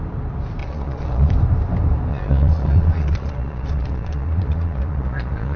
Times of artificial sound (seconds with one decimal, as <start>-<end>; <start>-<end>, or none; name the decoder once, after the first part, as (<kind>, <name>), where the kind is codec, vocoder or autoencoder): 0.6-1.3 (vocoder, Vocos); 2.1-5.6